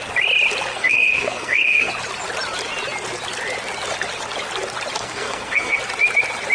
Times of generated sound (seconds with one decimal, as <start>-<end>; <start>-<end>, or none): 0.7-1.9; 5.0-5.8

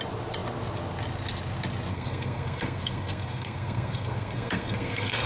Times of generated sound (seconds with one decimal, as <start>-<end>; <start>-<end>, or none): 1.9-5.3

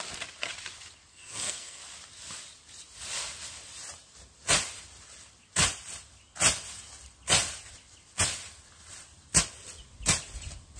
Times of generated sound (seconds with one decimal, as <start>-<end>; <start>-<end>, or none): 1.1-1.8

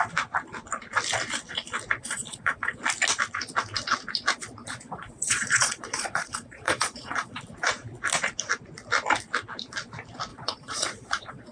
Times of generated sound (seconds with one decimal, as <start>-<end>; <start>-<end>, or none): 2.0-2.8; 4.6-7.4; 10.3-11.5

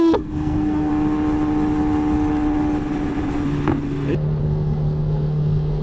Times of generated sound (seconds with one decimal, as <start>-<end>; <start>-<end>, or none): 0.0-0.9; 4.4-5.8

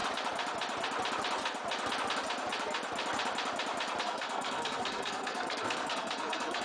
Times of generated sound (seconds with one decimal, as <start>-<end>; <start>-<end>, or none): 4.0-6.6

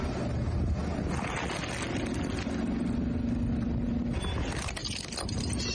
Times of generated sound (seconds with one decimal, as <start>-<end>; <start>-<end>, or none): 0.0-0.8; 4.2-4.8

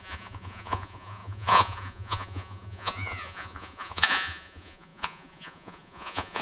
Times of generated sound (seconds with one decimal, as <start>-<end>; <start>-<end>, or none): 0.0-6.4